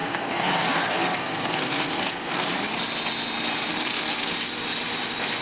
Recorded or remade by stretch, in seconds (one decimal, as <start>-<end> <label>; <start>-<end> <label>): 0.0-2.5 remade; 2.5-3.7 recorded; 3.7-4.3 remade; 4.3-5.4 recorded